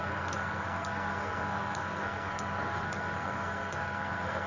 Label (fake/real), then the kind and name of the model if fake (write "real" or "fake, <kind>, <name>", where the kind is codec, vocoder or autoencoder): fake, codec, SNAC